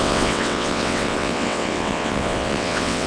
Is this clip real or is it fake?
fake